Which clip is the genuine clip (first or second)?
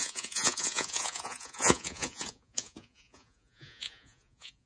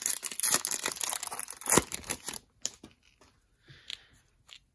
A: second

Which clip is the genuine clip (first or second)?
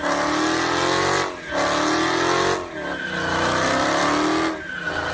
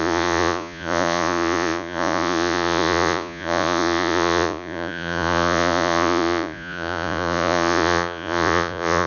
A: first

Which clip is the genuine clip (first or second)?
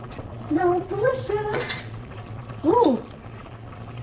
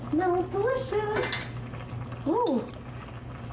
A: second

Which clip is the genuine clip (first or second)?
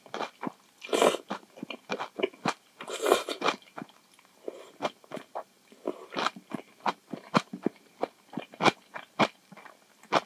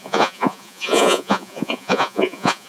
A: first